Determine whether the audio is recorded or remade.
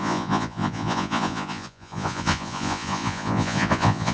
remade